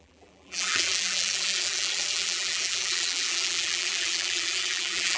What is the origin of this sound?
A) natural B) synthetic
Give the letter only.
B